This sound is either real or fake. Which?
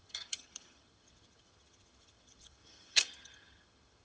fake